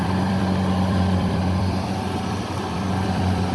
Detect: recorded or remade remade